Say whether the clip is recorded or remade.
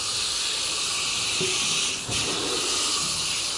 recorded